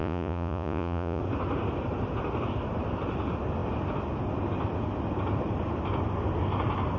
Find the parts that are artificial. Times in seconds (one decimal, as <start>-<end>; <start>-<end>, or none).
0.0-1.2